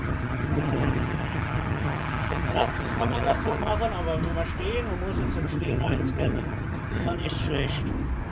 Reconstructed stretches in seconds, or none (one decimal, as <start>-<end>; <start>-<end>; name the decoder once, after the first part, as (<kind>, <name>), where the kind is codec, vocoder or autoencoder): 0.0-3.7 (vocoder, HiFi-GAN); 5.4-7.8